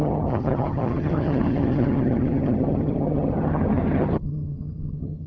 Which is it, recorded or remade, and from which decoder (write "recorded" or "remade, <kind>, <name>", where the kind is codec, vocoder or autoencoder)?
remade, vocoder, HiFi-GAN